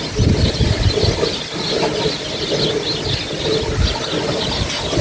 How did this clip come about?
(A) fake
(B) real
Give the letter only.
B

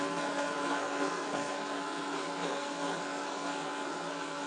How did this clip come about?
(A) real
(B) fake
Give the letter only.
B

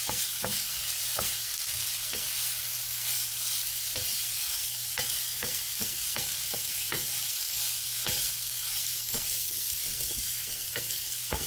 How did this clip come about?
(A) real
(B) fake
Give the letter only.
B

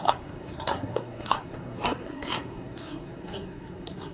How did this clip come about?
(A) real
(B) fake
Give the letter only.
B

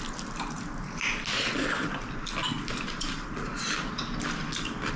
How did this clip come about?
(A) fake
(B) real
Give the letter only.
B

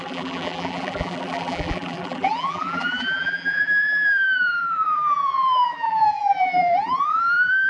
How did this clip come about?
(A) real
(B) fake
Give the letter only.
B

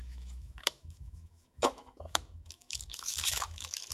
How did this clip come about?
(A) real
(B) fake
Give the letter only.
B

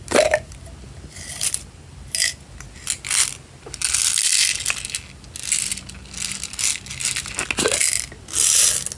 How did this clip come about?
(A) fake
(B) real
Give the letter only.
B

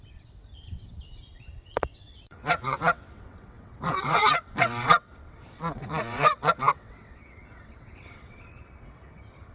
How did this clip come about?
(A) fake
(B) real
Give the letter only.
A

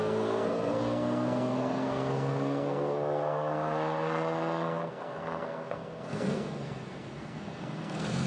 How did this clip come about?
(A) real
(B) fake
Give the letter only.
B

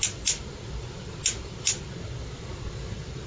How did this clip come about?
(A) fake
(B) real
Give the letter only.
B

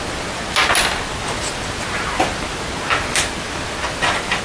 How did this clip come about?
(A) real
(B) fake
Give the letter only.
A